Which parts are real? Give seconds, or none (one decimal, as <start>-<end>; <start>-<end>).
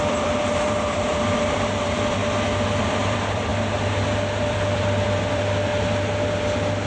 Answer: 2.2-2.8; 3.5-4.5; 5.7-6.9